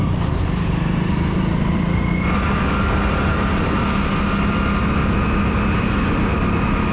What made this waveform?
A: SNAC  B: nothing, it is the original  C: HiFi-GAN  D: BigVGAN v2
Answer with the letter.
B